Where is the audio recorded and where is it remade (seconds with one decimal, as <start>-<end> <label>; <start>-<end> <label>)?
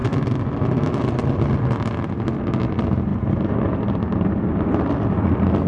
0.0-3.1 recorded; 3.1-4.9 remade; 4.9-5.7 recorded